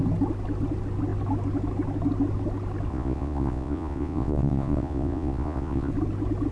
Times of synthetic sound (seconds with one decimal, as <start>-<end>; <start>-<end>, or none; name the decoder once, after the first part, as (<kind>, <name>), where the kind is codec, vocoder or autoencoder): 2.9-5.9 (vocoder, Vocos)